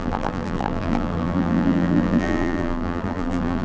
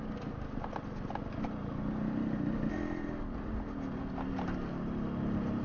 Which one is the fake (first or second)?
first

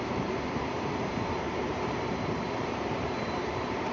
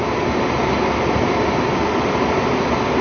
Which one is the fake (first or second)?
first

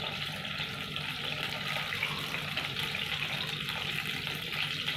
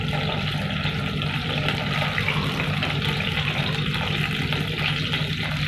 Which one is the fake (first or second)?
first